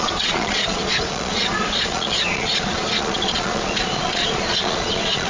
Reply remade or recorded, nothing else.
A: remade